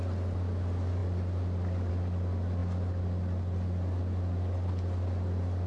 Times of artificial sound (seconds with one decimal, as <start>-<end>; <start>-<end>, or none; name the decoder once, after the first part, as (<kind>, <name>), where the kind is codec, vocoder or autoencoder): none